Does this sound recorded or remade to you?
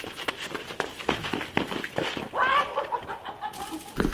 recorded